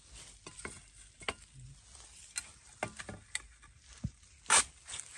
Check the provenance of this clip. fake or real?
real